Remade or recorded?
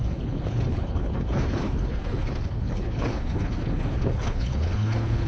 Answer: remade